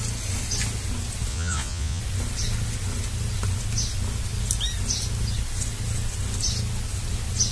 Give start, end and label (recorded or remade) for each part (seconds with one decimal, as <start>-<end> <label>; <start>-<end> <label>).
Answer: 0.0-1.3 recorded; 1.3-2.0 remade; 2.0-7.5 recorded